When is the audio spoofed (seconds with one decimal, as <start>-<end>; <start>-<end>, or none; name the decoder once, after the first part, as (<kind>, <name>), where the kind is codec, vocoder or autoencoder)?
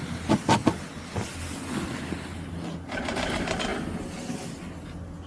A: none